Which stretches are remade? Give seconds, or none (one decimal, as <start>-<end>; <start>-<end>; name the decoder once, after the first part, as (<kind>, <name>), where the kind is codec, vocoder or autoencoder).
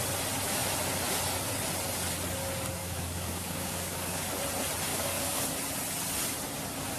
2.8-4.4 (codec, DAC); 4.9-5.4